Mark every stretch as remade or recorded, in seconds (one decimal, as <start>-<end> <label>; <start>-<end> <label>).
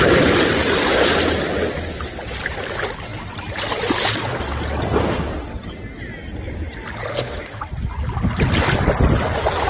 0.0-7.1 recorded; 7.1-7.6 remade; 7.6-9.7 recorded